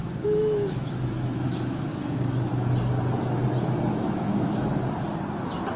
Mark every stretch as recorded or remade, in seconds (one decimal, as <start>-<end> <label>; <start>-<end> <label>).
0.0-2.5 remade; 2.5-3.9 recorded; 3.9-4.7 remade; 4.7-5.8 recorded